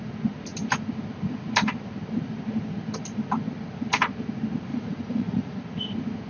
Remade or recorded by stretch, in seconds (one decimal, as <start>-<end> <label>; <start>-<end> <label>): 0.0-4.7 recorded; 4.7-5.6 remade; 5.6-6.3 recorded